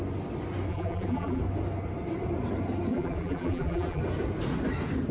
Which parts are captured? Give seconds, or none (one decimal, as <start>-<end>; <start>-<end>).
0.0-0.7; 1.4-2.9; 4.0-5.1